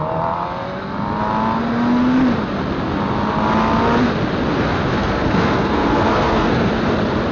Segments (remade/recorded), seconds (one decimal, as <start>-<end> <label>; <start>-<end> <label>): 0.0-4.9 recorded; 4.9-6.7 remade; 6.7-7.3 recorded